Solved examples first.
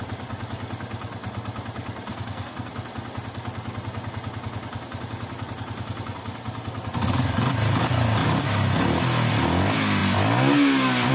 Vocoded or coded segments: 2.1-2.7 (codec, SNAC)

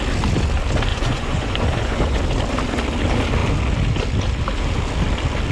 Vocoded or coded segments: 0.9-2.2 (vocoder, Vocos)

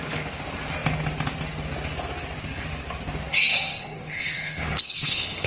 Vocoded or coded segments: 3.7-5.5 (codec, HILCodec)

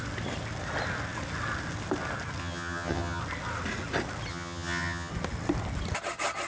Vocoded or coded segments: 2.4-3.2 (vocoder, HiFi-GAN); 4.3-5.1

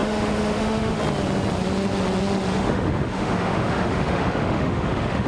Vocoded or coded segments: 0.0-1.0 (autoencoder, DAC-VAE); 2.5-5.3

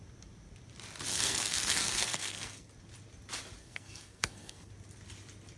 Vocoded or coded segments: 1.1-2.7 (codec, SNAC); 3.6-4.7

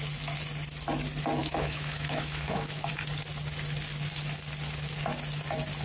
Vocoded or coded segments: 1.4-2.9 (autoencoder, DAC-VAE)

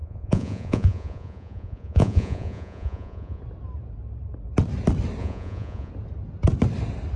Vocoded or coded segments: 0.0-3.4 (vocoder, Vocos); 5.2-5.9